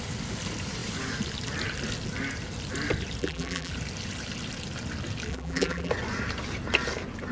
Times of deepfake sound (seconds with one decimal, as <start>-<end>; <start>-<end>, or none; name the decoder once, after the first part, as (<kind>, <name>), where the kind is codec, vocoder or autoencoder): 3.2-3.7 (vocoder, BigVGAN v2); 5.3-5.9